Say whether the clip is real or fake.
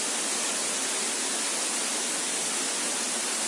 real